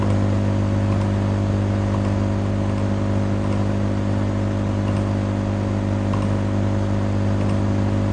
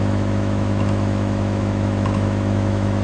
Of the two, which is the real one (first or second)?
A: first